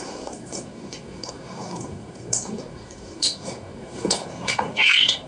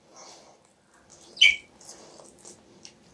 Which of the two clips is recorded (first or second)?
second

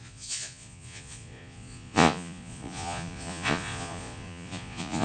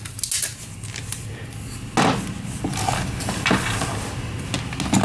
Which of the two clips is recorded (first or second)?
second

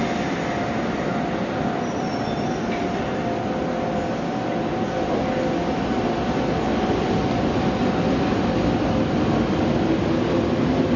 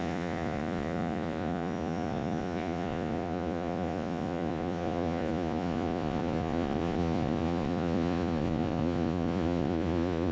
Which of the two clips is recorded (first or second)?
first